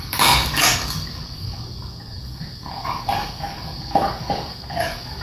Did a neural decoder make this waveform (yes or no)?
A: yes